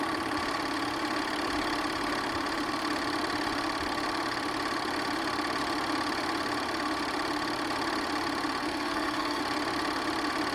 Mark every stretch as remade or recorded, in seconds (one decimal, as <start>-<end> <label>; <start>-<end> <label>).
0.0-8.6 recorded; 8.6-9.4 remade; 9.4-10.5 recorded